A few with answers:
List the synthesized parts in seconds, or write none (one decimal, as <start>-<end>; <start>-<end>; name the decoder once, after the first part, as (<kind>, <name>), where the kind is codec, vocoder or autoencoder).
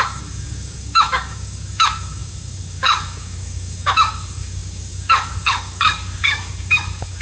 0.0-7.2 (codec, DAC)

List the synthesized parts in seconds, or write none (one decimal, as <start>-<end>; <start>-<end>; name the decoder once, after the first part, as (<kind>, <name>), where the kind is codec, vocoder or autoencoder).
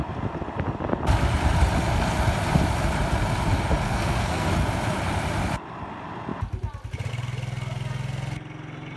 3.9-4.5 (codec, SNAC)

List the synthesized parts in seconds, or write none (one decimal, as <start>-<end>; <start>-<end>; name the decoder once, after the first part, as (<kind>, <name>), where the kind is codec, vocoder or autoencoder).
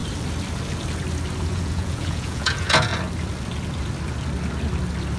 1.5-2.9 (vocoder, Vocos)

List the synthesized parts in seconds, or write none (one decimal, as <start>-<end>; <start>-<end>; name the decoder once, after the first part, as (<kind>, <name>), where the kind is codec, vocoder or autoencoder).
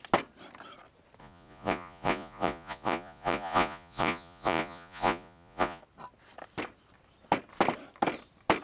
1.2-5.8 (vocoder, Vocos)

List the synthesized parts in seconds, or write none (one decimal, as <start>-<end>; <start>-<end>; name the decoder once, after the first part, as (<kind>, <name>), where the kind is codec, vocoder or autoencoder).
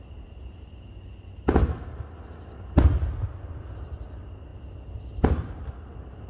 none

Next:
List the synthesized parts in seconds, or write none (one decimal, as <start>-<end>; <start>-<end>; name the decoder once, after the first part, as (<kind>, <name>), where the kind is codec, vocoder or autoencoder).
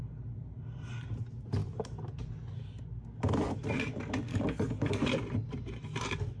4.3-4.9 (codec, DAC)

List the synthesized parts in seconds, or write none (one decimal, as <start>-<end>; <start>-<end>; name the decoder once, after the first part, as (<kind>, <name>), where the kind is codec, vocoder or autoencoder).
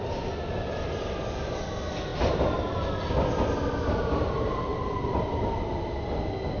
4.7-5.6 (vocoder, BigVGAN v2)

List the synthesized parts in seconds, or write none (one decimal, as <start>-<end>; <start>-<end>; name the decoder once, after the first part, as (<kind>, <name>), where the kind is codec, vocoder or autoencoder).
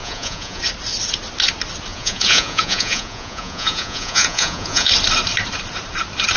0.0-0.6 (vocoder, Vocos); 1.9-4.9